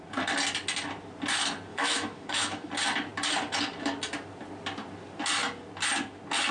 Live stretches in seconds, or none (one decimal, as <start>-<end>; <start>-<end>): 0.0-1.7; 2.7-6.5